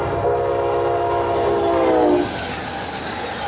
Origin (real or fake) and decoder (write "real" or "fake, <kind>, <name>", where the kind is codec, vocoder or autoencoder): real